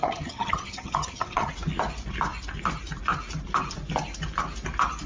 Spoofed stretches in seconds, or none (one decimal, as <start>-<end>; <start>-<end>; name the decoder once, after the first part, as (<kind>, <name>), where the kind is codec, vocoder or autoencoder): 0.0-1.5 (vocoder, HiFi-GAN)